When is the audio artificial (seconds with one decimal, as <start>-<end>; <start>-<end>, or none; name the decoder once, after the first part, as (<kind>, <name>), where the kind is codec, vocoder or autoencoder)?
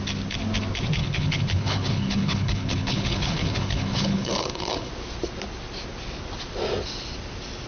1.0-4.9 (codec, HILCodec)